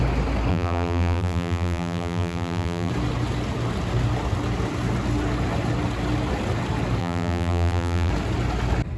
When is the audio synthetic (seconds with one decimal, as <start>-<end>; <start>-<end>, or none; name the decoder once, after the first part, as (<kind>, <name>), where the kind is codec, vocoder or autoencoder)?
0.5-2.9 (vocoder, BigVGAN v2); 7.0-8.1